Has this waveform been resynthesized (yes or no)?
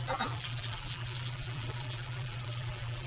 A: yes